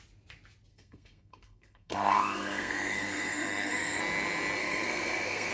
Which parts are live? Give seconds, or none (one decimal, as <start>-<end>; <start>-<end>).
0.0-0.7; 4.0-4.6